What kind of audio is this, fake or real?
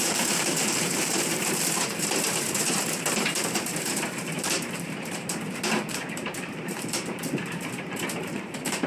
fake